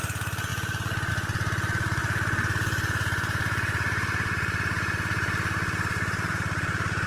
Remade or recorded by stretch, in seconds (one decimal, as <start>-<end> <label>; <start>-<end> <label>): 0.0-2.0 recorded; 2.0-6.3 remade; 6.3-7.1 recorded